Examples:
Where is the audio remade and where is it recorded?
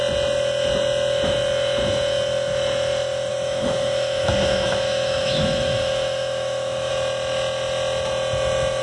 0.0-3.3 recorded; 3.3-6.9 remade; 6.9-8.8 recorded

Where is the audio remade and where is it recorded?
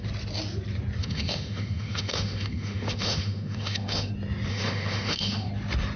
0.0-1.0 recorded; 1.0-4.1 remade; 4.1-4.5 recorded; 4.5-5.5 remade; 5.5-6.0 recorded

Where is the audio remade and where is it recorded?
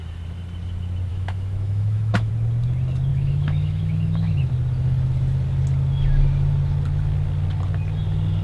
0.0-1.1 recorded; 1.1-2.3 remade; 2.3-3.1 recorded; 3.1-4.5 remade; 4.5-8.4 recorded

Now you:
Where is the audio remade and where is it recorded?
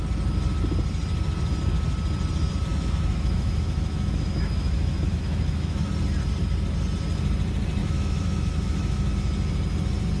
0.0-2.7 recorded; 2.7-5.9 remade; 5.9-7.8 recorded; 7.8-9.1 remade; 9.1-10.2 recorded